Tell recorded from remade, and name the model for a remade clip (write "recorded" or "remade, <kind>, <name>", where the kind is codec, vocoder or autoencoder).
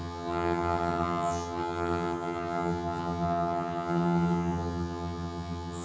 remade, vocoder, HiFi-GAN